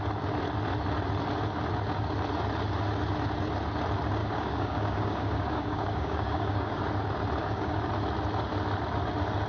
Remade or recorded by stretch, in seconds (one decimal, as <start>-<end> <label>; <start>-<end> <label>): 0.0-4.2 recorded; 4.2-6.8 remade; 6.8-7.4 recorded; 7.4-7.9 remade; 7.9-9.5 recorded